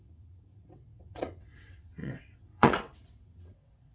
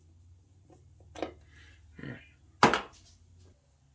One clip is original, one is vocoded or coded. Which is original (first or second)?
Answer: second